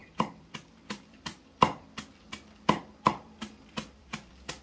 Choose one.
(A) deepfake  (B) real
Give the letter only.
A